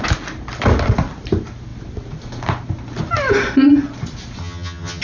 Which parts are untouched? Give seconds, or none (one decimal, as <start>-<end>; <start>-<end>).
0.0-4.4